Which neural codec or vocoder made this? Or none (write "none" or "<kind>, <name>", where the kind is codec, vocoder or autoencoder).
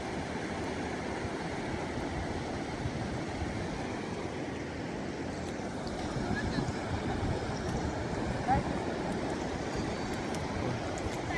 none